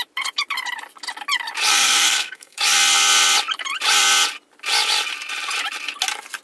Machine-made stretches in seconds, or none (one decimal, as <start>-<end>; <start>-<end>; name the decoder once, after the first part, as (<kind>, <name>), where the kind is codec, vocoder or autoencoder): 1.7-2.6 (codec, SNAC)